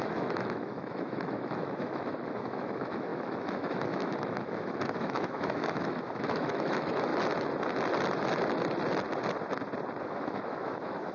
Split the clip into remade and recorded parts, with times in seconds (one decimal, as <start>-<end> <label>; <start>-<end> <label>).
0.0-7.1 remade; 7.1-10.0 recorded; 10.0-11.1 remade